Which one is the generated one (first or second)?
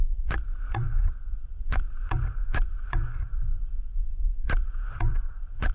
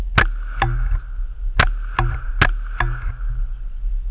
first